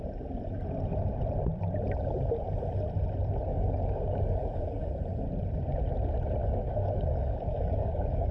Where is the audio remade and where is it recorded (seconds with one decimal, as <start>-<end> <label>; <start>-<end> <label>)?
0.0-3.5 recorded; 3.5-4.9 remade; 4.9-6.4 recorded; 6.4-8.3 remade